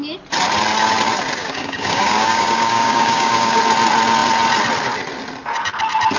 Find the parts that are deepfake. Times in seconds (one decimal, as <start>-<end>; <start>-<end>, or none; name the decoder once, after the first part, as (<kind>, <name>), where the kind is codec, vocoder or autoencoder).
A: 1.4-3.6 (codec, DAC)